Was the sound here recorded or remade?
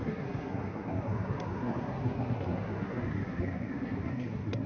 remade